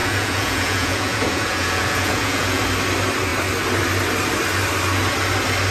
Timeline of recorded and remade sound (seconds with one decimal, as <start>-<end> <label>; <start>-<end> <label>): 0.0-2.6 remade; 2.6-5.7 recorded